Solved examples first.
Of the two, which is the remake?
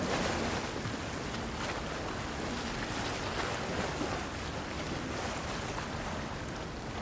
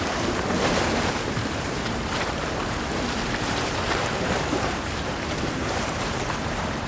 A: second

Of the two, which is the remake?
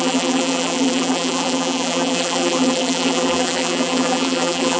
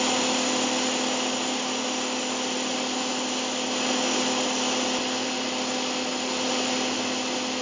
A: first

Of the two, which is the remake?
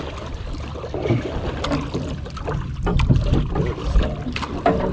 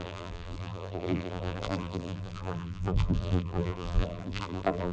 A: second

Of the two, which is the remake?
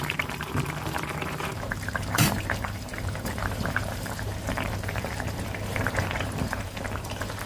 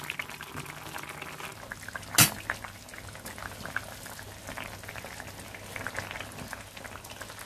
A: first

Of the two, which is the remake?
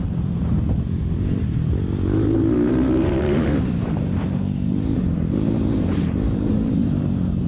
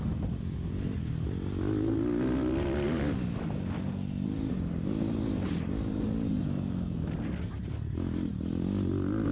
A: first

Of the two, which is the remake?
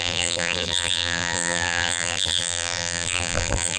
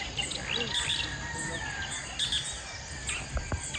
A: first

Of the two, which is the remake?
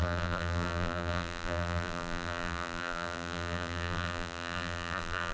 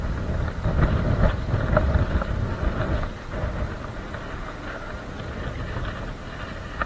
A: first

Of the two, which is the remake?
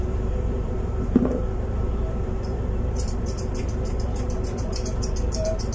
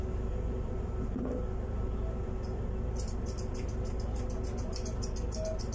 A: first